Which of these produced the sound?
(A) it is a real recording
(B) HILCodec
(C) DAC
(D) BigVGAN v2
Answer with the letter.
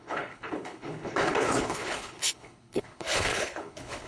B